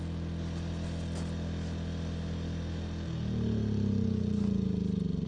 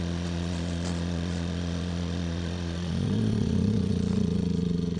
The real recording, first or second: first